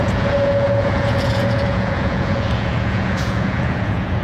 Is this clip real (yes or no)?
no